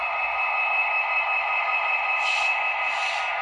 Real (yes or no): yes